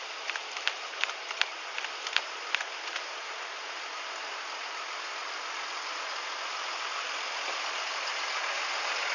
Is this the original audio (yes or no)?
yes